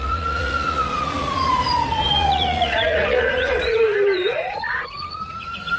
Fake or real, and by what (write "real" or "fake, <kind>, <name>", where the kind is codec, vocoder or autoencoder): fake, vocoder, Vocos